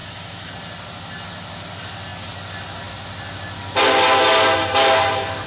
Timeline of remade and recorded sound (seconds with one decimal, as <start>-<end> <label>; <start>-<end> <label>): 0.0-0.5 remade; 0.5-5.5 recorded